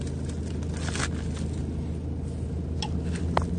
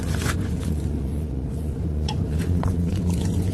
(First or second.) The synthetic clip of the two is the second